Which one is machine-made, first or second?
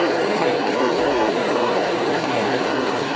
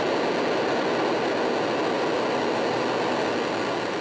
first